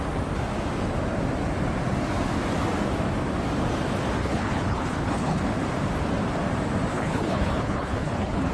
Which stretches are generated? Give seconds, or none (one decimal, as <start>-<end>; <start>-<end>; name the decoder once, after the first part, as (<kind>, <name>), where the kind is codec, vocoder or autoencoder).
4.2-5.4 (codec, HILCodec); 6.9-8.5